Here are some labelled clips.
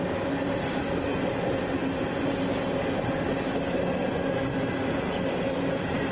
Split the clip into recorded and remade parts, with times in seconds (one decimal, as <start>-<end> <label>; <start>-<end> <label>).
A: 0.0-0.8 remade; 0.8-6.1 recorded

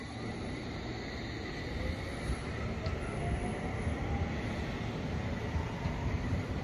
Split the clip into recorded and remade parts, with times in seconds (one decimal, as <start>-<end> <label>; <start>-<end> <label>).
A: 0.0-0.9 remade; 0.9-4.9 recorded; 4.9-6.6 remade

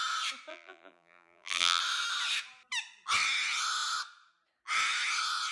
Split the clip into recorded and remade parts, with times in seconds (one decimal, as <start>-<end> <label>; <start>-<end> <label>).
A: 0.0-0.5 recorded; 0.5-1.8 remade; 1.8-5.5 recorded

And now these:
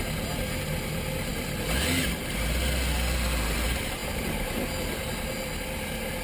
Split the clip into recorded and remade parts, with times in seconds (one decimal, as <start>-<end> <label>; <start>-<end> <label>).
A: 0.0-4.0 recorded; 4.0-5.0 remade; 5.0-6.2 recorded

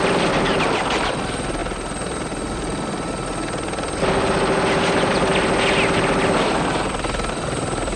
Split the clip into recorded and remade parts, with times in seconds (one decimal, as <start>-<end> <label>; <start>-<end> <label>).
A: 0.0-1.6 remade; 1.6-4.1 recorded; 4.1-5.3 remade; 5.3-6.9 recorded; 6.9-8.0 remade